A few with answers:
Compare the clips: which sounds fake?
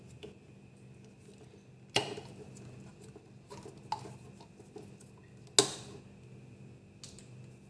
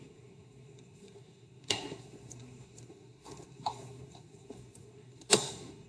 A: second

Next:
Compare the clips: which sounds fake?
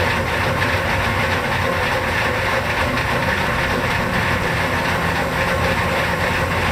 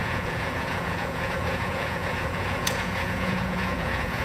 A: second